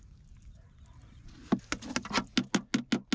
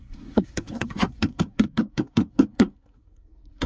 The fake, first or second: second